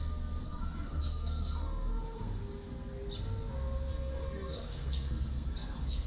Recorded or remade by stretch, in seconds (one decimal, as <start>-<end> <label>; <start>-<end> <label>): 0.0-0.4 recorded; 0.4-2.4 remade; 2.4-3.9 recorded; 3.9-6.1 remade

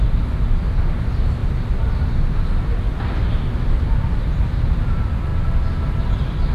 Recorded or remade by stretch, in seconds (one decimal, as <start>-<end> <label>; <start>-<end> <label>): 0.0-6.5 recorded

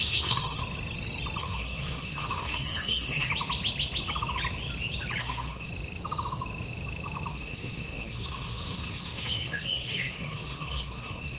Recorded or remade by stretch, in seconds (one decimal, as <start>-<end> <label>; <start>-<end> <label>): 0.0-0.6 remade; 0.6-1.4 recorded; 1.4-3.3 remade; 3.3-5.2 recorded; 5.2-5.7 remade; 5.7-7.3 recorded; 7.3-11.4 remade

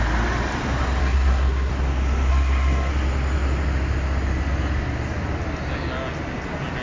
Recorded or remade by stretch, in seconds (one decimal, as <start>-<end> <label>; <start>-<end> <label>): 0.0-1.0 recorded; 1.0-1.7 remade; 1.7-2.3 recorded; 2.3-2.9 remade; 2.9-6.8 recorded

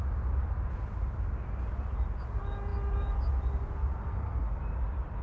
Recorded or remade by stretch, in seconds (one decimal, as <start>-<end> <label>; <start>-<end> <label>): 0.0-4.0 recorded; 4.0-4.6 remade; 4.6-5.2 recorded

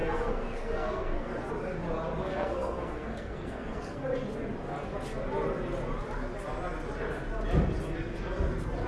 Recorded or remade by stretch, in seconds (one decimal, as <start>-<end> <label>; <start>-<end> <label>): 0.0-1.5 remade; 1.5-2.2 recorded; 2.2-4.0 remade; 4.0-8.9 recorded

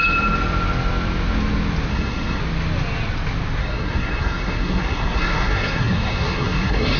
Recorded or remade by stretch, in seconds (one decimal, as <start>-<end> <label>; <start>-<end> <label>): 0.0-1.9 recorded; 1.9-2.4 remade; 2.4-3.6 recorded; 3.6-7.0 remade

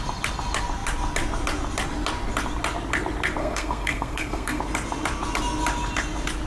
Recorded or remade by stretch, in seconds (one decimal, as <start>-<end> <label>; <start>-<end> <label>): 0.0-3.4 recorded; 3.4-4.6 remade; 4.6-6.5 recorded